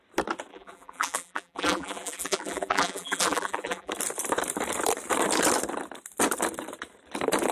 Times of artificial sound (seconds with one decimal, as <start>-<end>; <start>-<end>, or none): 0.5-3.9